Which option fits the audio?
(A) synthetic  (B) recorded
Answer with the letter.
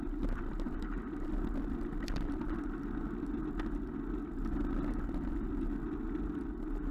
B